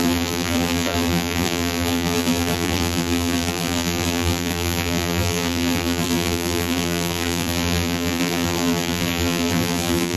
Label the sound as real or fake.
fake